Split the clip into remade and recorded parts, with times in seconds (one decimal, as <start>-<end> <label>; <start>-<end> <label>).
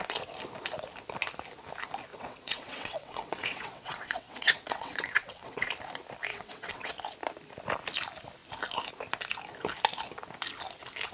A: 0.0-2.1 recorded; 2.1-5.7 remade; 5.7-6.3 recorded; 6.3-6.9 remade; 6.9-11.1 recorded